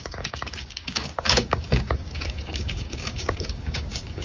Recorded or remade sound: remade